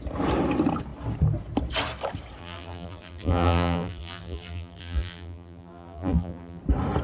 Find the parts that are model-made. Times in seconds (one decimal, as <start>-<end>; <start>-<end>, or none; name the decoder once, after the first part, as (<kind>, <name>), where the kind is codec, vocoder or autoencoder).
2.4-6.6 (vocoder, BigVGAN v2)